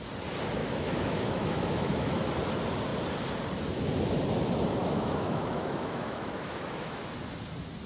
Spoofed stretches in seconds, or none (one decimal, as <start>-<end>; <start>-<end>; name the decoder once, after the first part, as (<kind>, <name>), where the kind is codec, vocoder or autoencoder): 0.6-2.3 (autoencoder, DAC-VAE); 4.8-7.0